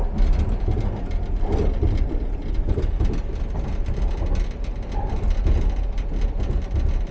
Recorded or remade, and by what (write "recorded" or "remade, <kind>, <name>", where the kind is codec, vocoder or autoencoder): recorded